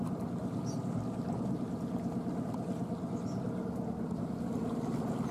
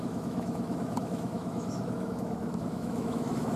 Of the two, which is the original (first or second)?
first